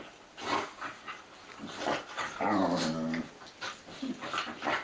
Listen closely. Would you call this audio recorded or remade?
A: recorded